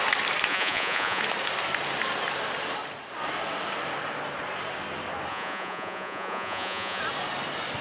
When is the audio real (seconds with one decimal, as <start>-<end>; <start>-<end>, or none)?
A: 0.0-0.5; 1.2-5.3; 7.0-7.8